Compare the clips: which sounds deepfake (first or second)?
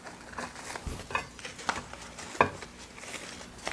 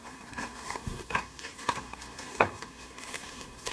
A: second